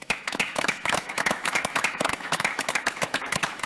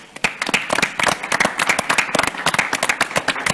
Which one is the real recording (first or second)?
second